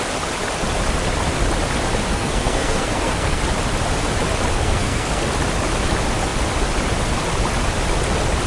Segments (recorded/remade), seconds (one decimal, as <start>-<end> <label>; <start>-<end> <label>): 0.0-2.1 recorded; 2.1-3.4 remade; 3.4-4.5 recorded; 4.5-5.2 remade; 5.2-8.5 recorded